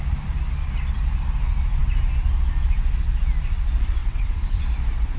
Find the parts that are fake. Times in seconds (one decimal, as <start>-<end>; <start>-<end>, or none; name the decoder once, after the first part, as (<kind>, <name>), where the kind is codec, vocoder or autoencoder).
4.0-4.6 (vocoder, WaveNeXt)